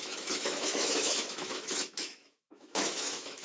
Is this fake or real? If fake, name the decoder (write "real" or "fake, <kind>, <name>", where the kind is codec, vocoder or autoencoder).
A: fake, autoencoder, DAC-VAE